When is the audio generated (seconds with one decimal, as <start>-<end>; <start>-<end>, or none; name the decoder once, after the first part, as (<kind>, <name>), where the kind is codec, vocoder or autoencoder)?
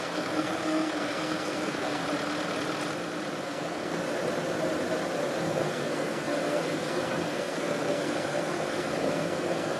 0.0-2.0 (codec, SNAC); 3.4-4.0; 5.4-9.8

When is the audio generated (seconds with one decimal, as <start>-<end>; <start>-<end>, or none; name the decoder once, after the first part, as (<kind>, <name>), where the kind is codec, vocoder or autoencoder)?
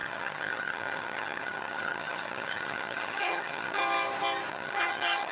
0.0-3.8 (vocoder, HiFi-GAN); 4.5-5.3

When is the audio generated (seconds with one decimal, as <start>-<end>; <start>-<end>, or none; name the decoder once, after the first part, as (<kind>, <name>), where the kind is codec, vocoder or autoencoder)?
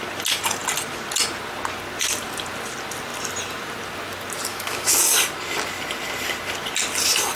4.5-5.0 (autoencoder, DAC-VAE)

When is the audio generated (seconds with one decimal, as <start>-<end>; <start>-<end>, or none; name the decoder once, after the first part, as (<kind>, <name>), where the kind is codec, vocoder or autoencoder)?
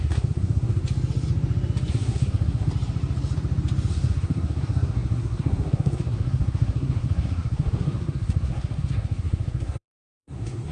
0.0-0.8 (codec, SNAC); 1.9-2.7; 3.9-10.7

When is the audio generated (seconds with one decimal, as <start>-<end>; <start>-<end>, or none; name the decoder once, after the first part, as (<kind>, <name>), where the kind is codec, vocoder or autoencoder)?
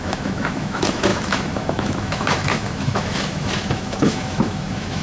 0.0-5.0 (autoencoder, DAC-VAE)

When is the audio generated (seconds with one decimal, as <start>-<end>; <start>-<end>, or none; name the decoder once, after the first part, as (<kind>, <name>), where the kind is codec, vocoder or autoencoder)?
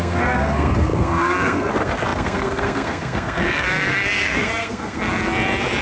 0.0-5.1 (codec, SNAC)